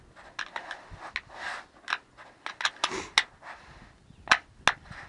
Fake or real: real